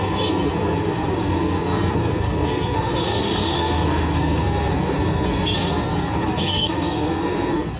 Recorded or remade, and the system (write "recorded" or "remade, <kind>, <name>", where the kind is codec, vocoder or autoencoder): remade, codec, SNAC